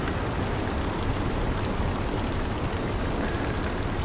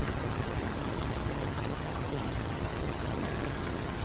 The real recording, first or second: first